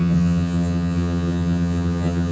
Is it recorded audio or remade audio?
remade